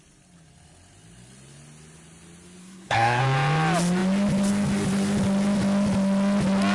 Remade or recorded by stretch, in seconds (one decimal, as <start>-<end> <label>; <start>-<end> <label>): 0.0-2.6 recorded; 2.6-3.2 remade; 3.2-6.7 recorded